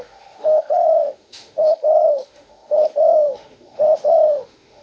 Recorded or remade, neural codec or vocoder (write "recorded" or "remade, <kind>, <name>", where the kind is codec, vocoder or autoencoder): remade, autoencoder, DAC-VAE